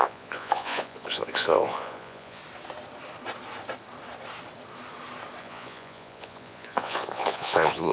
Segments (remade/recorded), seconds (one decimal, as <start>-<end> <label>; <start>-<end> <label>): 0.0-2.4 remade; 2.4-5.4 recorded; 5.4-7.9 remade

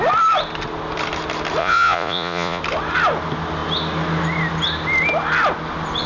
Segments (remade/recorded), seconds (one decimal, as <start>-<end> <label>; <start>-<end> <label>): 0.0-1.6 recorded; 1.6-2.6 remade; 2.6-6.1 recorded

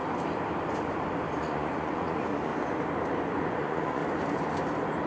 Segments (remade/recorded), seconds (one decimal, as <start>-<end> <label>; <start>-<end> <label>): 0.0-1.4 recorded; 1.4-2.5 remade; 2.5-3.2 recorded; 3.2-4.0 remade; 4.0-5.1 recorded

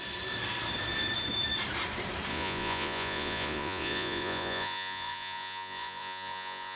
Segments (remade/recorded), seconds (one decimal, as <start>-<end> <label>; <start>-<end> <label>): 0.0-2.3 recorded; 2.3-6.8 remade

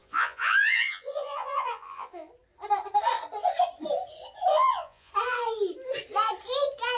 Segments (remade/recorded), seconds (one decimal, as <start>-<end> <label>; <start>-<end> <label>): 0.0-2.3 remade; 2.3-4.5 recorded; 4.5-5.1 remade; 5.1-7.0 recorded